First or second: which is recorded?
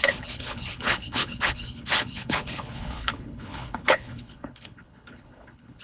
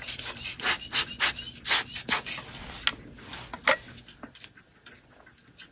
second